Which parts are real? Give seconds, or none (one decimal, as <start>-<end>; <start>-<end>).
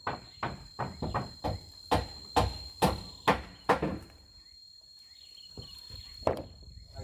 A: 0.0-3.9; 6.4-7.0